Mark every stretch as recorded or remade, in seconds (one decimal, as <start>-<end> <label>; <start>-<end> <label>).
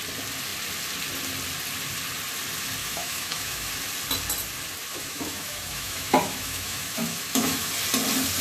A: 0.0-2.8 recorded; 2.8-3.7 remade; 3.7-4.9 recorded; 4.9-7.7 remade; 7.7-8.4 recorded